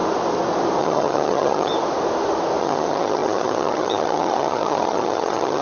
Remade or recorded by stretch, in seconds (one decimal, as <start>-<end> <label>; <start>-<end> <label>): 0.0-0.8 recorded; 0.8-1.7 remade; 1.7-2.6 recorded; 2.6-5.6 remade